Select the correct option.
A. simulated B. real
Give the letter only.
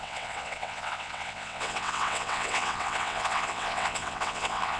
A